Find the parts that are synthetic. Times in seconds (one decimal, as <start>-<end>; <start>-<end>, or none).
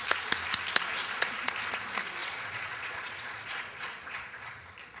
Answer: 0.9-1.5; 2.2-4.6